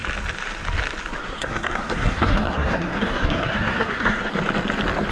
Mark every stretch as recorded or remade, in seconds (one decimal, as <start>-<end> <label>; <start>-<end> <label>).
0.0-1.2 recorded; 1.2-4.3 remade; 4.3-5.1 recorded